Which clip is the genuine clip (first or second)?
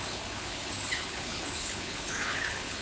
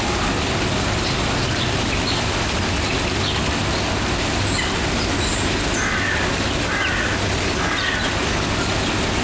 second